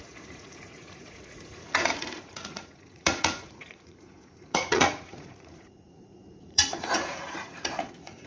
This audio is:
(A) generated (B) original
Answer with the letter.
A